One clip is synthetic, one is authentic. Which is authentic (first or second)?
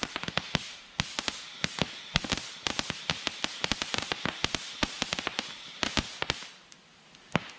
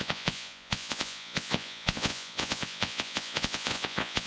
first